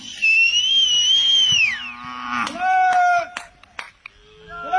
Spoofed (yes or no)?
no